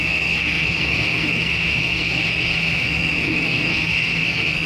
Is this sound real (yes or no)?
no